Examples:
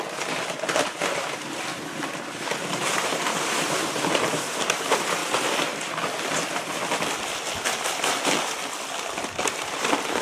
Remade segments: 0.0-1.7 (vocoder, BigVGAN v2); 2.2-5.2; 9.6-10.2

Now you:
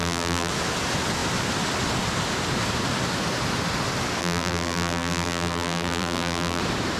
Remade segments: 0.0-0.5 (vocoder, BigVGAN v2); 4.2-6.6

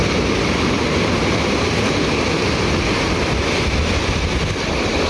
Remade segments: none

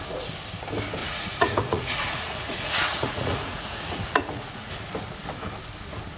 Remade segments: 1.0-4.7 (vocoder, Vocos)

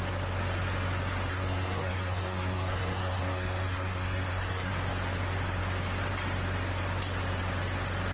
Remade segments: 1.3-4.7 (codec, SNAC)

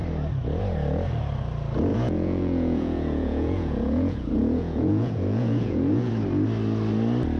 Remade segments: 1.9-6.1 (vocoder, Vocos)

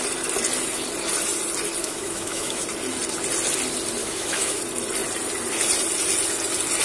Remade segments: 1.8-2.6 (autoencoder, DAC-VAE); 4.0-4.6